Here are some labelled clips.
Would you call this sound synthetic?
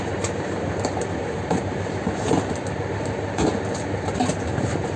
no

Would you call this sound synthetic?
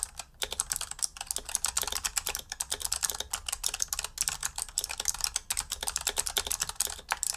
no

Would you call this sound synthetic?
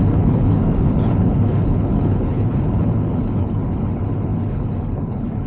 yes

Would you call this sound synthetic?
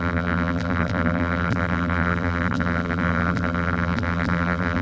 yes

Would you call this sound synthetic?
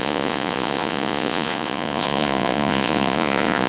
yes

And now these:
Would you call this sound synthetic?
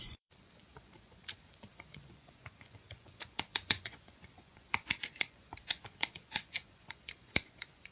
yes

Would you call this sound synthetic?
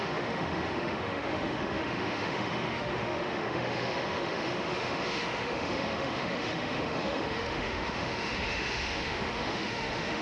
yes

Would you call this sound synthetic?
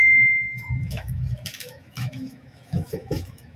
yes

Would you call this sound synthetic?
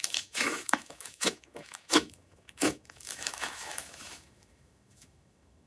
yes